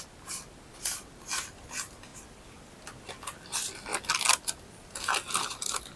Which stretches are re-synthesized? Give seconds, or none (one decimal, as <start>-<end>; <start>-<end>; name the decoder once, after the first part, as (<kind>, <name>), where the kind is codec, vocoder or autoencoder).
none